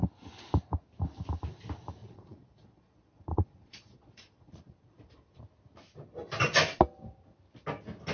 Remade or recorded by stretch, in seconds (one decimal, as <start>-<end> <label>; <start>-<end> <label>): 0.0-2.0 recorded; 2.0-5.4 remade; 5.4-8.1 recorded

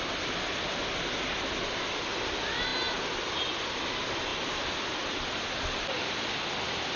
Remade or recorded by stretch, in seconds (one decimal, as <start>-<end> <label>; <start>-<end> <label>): 0.0-7.0 recorded

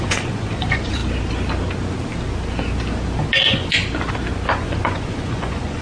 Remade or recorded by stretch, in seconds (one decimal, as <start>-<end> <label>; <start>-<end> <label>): 0.0-1.0 remade; 1.0-3.4 recorded; 3.4-3.8 remade; 3.8-4.6 recorded; 4.6-5.8 remade

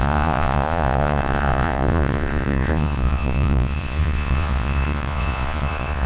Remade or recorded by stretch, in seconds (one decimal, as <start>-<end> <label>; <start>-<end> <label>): 0.0-6.1 remade